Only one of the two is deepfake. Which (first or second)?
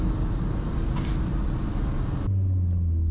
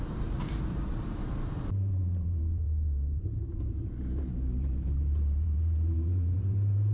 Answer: second